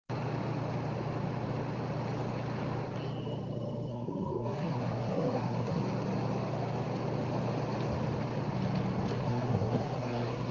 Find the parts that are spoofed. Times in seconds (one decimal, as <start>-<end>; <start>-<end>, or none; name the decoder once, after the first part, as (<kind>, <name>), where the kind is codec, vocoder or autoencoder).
3.9-5.8 (codec, SNAC); 9.1-10.5